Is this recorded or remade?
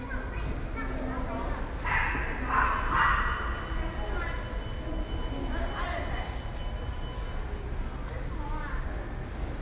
recorded